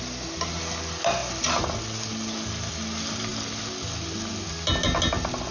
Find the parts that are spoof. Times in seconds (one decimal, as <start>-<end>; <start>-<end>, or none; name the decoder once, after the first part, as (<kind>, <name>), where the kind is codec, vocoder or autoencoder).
none